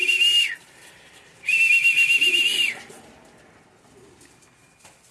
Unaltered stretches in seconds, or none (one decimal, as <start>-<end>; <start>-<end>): 3.1-5.1